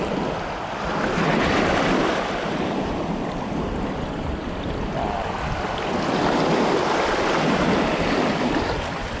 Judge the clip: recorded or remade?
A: remade